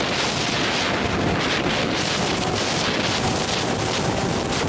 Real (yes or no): yes